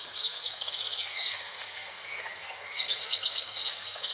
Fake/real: fake